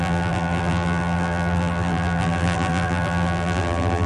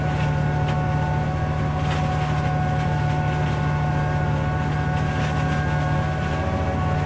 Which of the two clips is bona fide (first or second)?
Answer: second